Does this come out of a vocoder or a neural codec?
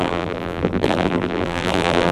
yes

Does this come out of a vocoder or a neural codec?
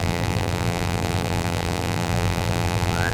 yes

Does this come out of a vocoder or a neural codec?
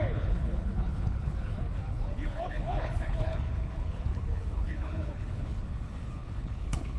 yes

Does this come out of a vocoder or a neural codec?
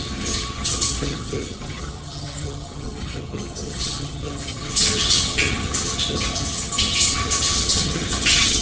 yes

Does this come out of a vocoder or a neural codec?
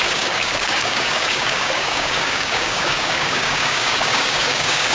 yes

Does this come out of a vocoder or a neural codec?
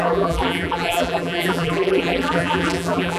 yes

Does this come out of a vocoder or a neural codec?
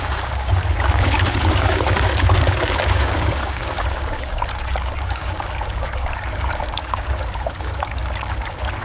yes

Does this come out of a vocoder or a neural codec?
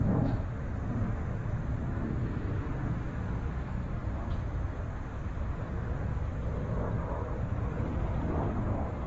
no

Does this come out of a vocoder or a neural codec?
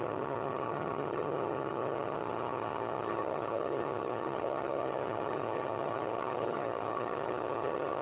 yes